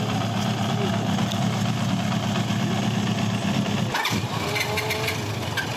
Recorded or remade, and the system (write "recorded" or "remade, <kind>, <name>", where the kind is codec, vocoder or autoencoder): recorded